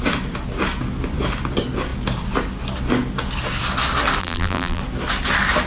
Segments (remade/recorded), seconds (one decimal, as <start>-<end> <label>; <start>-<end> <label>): 0.0-4.2 recorded; 4.2-4.8 remade; 4.8-5.7 recorded